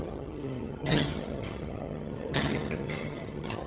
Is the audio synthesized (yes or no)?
yes